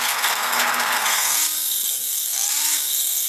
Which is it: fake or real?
fake